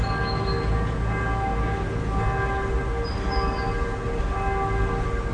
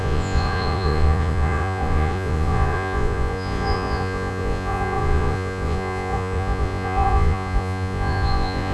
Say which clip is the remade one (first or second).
second